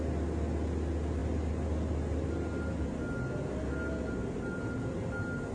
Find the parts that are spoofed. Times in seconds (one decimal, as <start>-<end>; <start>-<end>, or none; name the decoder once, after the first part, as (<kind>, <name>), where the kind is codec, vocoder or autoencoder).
none

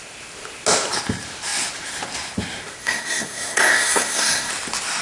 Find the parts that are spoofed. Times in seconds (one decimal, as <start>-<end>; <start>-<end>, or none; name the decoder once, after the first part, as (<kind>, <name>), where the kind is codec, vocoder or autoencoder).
2.8-4.5 (codec, SNAC)

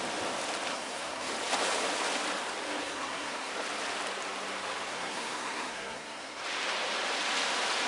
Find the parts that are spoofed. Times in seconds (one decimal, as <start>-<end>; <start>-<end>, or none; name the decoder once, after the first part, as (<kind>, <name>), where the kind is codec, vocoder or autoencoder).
0.7-1.3 (codec, SNAC); 2.8-3.5; 4.9-6.4

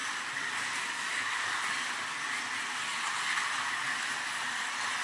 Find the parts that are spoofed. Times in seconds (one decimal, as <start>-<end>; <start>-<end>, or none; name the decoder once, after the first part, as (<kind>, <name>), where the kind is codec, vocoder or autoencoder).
none

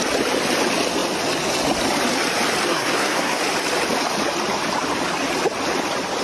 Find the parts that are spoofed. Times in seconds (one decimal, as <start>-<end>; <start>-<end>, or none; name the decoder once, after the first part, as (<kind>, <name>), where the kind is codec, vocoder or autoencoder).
2.7-3.4 (codec, SNAC)